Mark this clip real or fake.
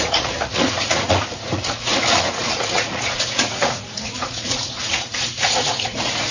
fake